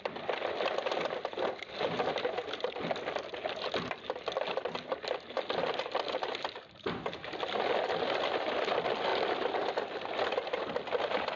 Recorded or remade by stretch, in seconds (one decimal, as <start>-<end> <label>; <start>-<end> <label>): 0.0-11.4 recorded